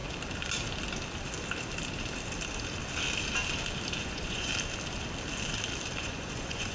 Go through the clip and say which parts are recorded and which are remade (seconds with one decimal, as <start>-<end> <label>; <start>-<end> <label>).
0.0-4.0 recorded; 4.0-4.5 remade; 4.5-6.0 recorded; 6.0-6.7 remade